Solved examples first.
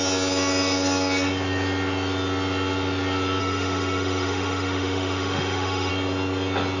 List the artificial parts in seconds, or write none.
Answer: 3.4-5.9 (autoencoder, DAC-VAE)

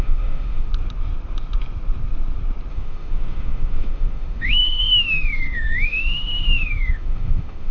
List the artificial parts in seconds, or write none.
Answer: 0.0-0.7 (autoencoder, DAC-VAE); 2.7-7.7

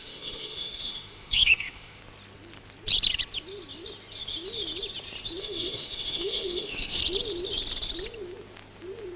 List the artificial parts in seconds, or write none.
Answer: 0.0-2.0 (autoencoder, DAC-VAE); 5.4-7.0

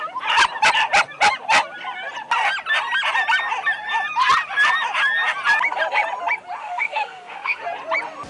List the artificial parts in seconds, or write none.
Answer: 6.6-7.6 (autoencoder, DAC-VAE)

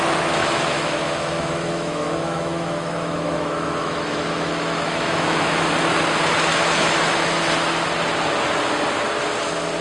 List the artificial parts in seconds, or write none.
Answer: 0.4-5.6 (autoencoder, DAC-VAE); 6.5-7.4

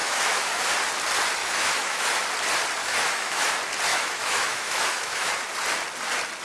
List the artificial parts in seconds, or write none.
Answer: 0.0-0.7 (autoencoder, DAC-VAE); 1.4-2.2; 2.8-3.5; 3.9-5.3

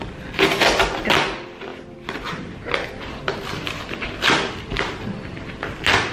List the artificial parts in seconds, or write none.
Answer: none